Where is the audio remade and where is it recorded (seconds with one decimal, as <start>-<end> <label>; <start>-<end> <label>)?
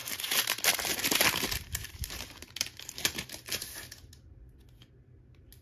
0.0-3.3 remade; 3.3-5.6 recorded